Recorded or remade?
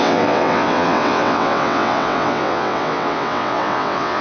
remade